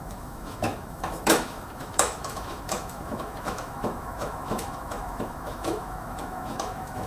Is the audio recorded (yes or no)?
no